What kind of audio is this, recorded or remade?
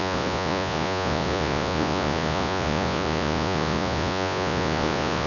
remade